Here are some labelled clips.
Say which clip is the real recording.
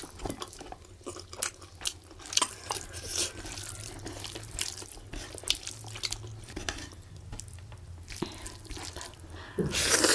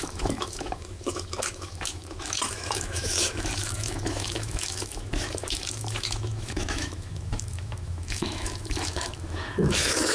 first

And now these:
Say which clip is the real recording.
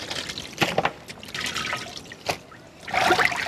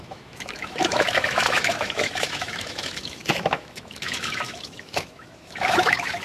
first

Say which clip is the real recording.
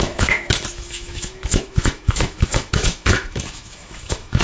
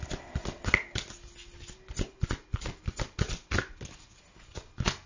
second